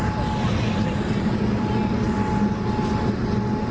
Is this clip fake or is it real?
real